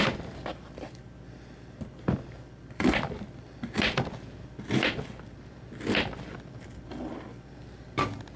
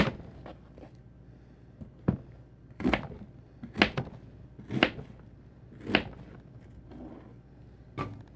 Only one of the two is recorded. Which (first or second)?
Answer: second